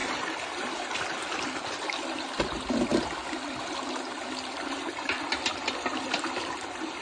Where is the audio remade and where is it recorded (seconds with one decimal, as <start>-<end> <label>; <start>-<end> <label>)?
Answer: 0.0-7.0 recorded